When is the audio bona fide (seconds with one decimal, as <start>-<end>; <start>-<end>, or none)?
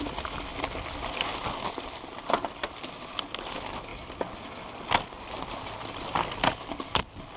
0.0-6.2; 7.0-7.4